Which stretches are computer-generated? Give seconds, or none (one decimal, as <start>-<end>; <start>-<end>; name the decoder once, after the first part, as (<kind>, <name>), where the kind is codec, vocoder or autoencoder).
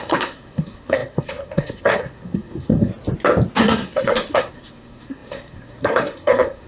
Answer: 0.0-2.9 (codec, SNAC); 3.6-6.7